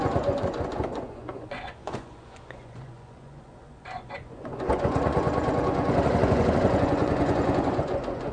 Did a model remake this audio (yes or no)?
yes